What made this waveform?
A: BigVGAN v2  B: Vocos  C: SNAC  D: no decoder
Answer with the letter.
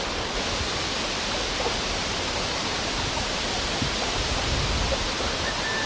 D